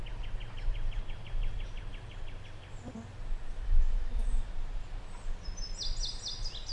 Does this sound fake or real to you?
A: real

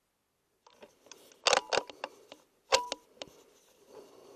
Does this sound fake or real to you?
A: real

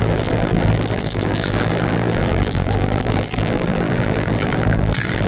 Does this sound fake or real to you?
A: fake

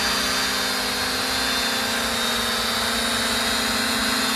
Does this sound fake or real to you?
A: real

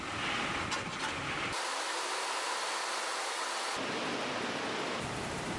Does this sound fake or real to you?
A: real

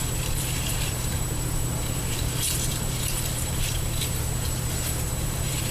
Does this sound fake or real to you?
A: fake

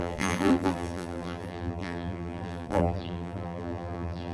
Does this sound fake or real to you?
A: fake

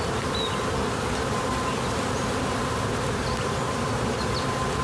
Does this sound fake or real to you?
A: fake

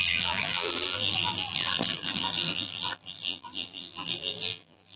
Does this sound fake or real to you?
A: fake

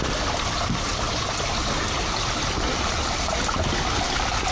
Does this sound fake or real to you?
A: real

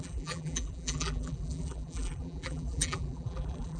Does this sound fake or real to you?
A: fake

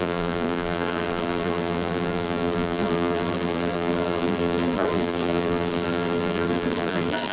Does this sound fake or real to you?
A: fake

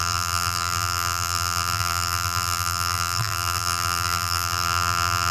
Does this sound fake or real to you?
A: fake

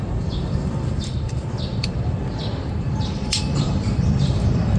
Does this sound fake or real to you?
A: fake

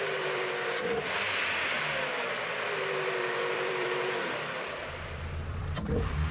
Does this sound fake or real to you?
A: fake